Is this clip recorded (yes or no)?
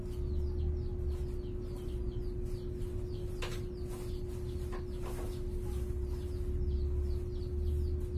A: yes